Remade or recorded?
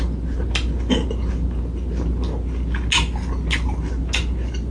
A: recorded